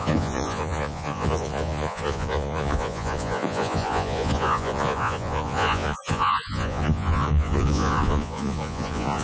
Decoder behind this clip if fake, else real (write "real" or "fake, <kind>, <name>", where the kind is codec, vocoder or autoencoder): fake, vocoder, Vocos